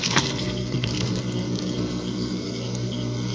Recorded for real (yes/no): no